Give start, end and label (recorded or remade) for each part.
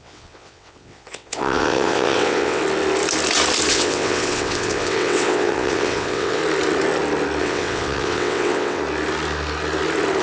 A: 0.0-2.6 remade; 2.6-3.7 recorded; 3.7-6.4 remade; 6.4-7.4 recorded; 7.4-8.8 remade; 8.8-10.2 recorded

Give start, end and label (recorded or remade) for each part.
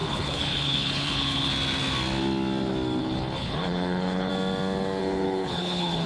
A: 0.0-1.5 remade; 1.5-3.0 recorded; 3.0-4.3 remade; 4.3-5.0 recorded; 5.0-6.1 remade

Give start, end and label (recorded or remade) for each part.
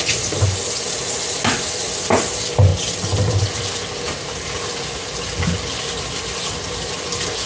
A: 0.0-7.5 recorded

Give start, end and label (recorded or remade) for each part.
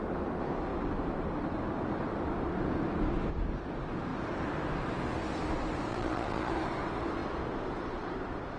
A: 0.0-5.9 recorded; 5.9-6.5 remade; 6.5-8.6 recorded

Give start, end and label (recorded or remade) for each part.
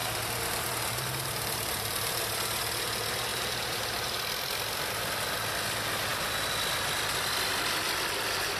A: 0.0-2.2 remade; 2.2-3.3 recorded; 3.3-4.2 remade; 4.2-8.6 recorded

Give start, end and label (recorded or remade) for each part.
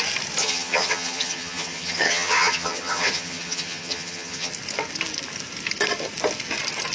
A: 0.0-0.4 recorded; 0.4-4.5 remade; 4.5-6.9 recorded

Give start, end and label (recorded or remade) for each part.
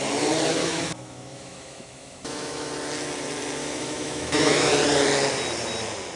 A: 0.0-0.6 recorded; 0.6-2.7 remade; 2.7-3.6 recorded; 3.6-4.7 remade; 4.7-6.2 recorded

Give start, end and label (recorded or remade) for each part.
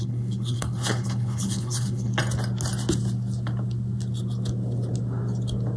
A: 0.0-2.1 remade; 2.1-5.8 recorded